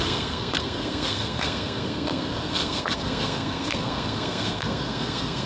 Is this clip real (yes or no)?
no